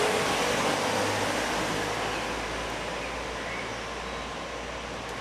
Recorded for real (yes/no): yes